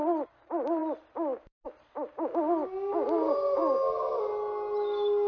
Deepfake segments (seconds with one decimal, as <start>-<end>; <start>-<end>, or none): none